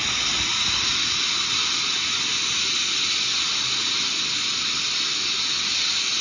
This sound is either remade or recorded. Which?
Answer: recorded